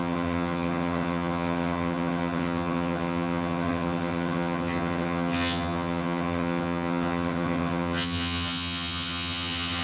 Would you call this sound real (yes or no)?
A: no